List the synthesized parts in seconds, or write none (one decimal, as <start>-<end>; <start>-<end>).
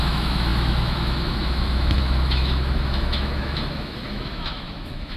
0.0-5.2